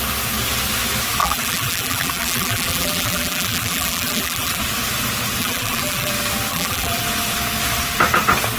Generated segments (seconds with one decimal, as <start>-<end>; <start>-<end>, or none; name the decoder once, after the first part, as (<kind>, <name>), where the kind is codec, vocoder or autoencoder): 1.2-4.6 (vocoder, BigVGAN v2); 5.4-6.1; 6.5-7.0